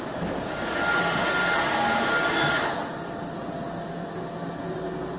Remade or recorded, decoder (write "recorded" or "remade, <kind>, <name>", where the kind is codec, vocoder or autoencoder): recorded